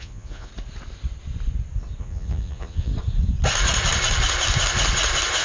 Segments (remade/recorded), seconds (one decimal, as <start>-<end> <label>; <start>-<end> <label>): 0.0-0.5 remade; 0.5-2.0 recorded; 2.0-2.9 remade; 2.9-5.4 recorded